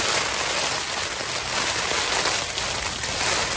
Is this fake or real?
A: real